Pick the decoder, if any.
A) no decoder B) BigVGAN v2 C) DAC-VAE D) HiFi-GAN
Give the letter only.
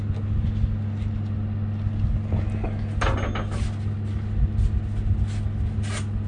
A